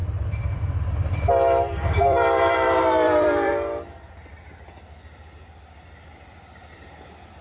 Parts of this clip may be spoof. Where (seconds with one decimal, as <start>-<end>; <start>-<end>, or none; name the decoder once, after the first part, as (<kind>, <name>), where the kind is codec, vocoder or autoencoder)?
0.0-3.5 (vocoder, BigVGAN v2)